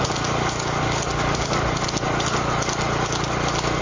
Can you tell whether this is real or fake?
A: real